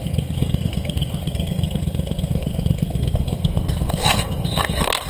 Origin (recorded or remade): remade